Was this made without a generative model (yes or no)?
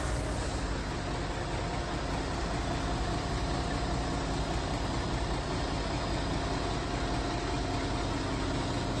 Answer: yes